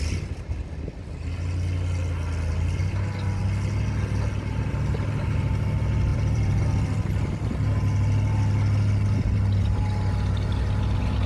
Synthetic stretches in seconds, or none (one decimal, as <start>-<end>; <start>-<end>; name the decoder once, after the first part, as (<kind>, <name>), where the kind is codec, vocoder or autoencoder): 6.1-6.6 (vocoder, BigVGAN v2)